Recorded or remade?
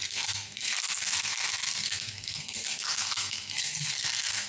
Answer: remade